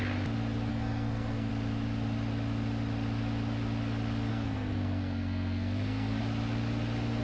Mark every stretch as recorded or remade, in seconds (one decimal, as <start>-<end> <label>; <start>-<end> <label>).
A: 0.0-0.7 recorded; 0.7-1.5 remade; 1.5-4.3 recorded; 4.3-6.2 remade; 6.2-7.2 recorded